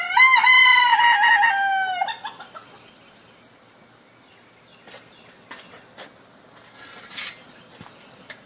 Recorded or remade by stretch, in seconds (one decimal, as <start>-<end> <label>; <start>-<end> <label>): 0.0-2.0 recorded; 2.0-4.4 remade; 4.4-8.4 recorded